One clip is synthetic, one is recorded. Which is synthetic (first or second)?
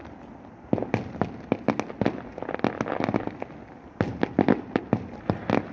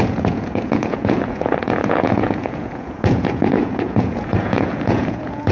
second